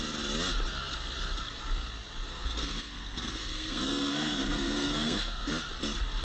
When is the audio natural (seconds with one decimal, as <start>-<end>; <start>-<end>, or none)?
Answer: 0.0-2.3; 5.5-6.2